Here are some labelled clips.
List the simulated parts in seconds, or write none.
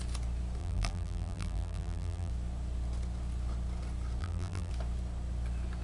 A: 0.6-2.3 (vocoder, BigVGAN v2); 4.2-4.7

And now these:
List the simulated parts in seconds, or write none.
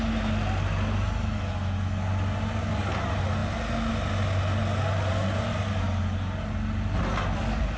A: none